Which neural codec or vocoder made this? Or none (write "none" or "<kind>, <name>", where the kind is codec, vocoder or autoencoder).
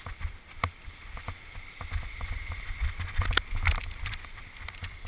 none